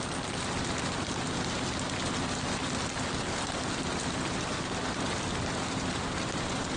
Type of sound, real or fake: real